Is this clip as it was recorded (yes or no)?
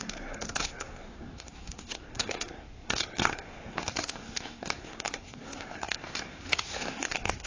no